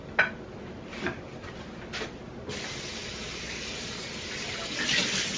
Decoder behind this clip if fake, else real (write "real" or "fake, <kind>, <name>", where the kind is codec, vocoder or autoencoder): real